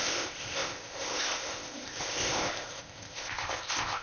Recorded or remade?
remade